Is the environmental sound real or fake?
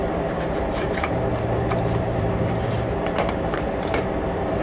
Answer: fake